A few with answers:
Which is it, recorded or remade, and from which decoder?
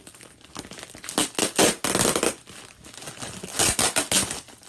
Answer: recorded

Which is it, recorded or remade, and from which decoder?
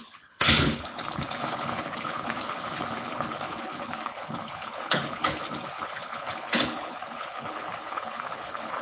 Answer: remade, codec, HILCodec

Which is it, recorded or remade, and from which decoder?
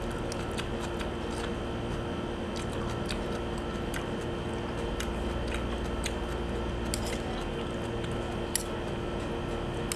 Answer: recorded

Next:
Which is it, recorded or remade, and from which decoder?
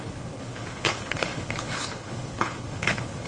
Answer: remade, codec, HILCodec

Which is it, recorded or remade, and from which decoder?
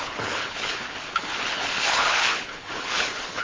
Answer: remade, codec, HILCodec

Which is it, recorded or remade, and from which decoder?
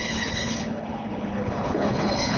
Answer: remade, codec, HILCodec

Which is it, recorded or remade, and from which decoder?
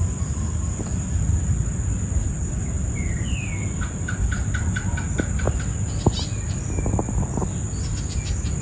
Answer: recorded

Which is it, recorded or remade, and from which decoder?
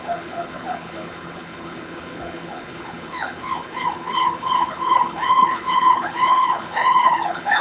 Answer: remade, codec, HILCodec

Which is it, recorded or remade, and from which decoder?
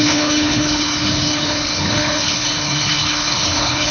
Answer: remade, codec, HILCodec